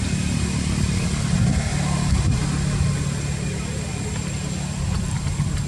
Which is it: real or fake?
real